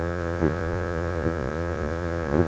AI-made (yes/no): yes